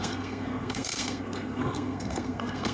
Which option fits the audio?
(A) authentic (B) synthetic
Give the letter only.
B